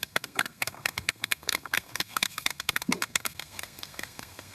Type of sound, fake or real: fake